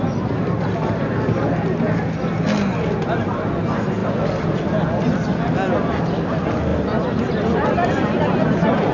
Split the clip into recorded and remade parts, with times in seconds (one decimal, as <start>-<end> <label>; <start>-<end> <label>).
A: 0.0-8.9 recorded